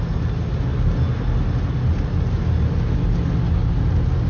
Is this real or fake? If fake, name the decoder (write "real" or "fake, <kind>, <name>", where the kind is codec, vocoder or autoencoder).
real